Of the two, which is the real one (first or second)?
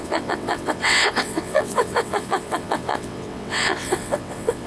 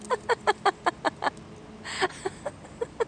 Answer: second